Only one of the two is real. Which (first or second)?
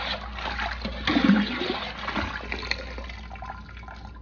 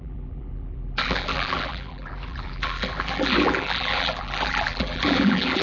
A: first